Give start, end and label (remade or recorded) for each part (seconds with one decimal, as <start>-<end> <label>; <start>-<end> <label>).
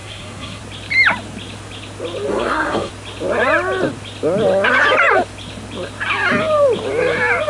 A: 0.0-0.6 remade; 0.6-2.3 recorded; 2.3-2.9 remade; 2.9-7.5 recorded